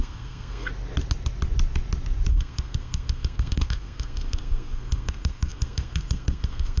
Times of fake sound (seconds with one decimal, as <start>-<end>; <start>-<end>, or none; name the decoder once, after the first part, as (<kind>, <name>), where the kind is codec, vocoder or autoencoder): 0.0-0.7 (codec, SNAC); 2.3-6.8